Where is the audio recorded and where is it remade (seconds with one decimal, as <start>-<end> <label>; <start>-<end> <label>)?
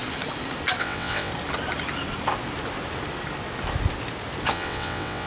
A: 0.0-0.8 recorded; 0.8-1.3 remade; 1.3-4.5 recorded; 4.5-5.3 remade